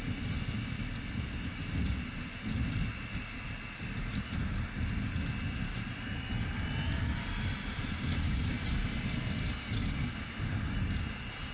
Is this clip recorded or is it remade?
recorded